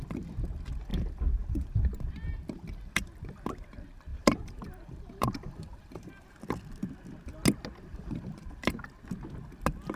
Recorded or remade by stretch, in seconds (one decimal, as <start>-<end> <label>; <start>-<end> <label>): 0.0-0.9 recorded; 0.9-2.1 remade; 2.1-4.1 recorded; 4.1-6.4 remade; 6.4-7.9 recorded; 7.9-8.7 remade; 8.7-10.0 recorded